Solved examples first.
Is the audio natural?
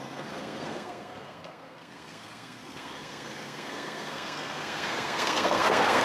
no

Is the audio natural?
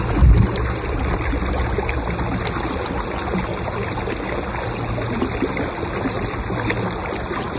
yes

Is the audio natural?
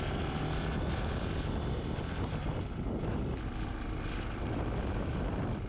yes